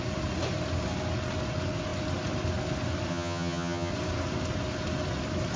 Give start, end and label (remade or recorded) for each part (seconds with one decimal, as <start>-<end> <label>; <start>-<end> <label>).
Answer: 0.0-3.1 recorded; 3.1-3.9 remade; 3.9-5.6 recorded